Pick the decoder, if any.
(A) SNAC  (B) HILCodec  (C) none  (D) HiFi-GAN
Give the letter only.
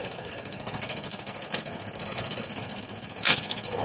A